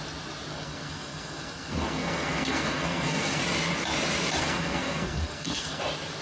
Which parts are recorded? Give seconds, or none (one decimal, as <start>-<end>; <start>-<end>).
0.0-0.5; 3.4-4.4; 5.8-6.2